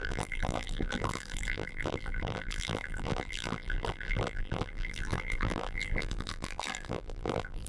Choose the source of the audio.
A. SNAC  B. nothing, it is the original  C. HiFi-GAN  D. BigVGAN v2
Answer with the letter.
D